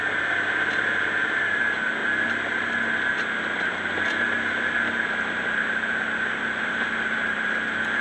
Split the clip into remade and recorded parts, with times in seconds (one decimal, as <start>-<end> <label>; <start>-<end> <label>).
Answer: 0.0-8.0 recorded